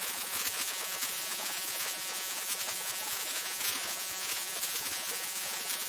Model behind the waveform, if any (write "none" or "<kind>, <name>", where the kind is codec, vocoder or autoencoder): vocoder, Vocos